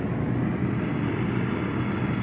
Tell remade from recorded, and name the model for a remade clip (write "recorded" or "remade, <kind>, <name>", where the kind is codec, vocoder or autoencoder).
recorded